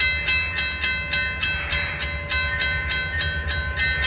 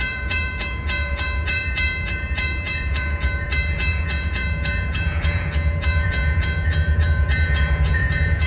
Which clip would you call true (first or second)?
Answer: first